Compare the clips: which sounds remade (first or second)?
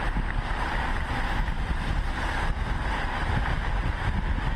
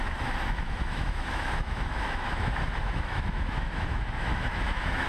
second